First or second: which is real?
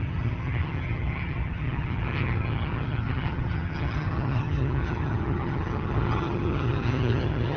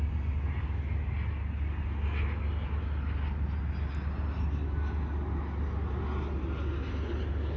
second